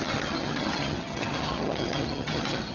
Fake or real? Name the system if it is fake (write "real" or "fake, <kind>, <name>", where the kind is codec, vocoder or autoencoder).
fake, vocoder, HiFi-GAN